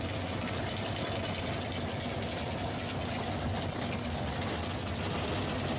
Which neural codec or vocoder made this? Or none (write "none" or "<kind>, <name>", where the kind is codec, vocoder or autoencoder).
none